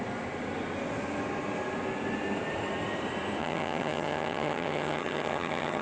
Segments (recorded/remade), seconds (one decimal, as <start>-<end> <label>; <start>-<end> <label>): 0.0-3.4 recorded; 3.4-5.8 remade